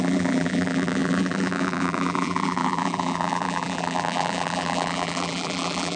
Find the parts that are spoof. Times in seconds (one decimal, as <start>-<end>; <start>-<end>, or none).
0.0-6.0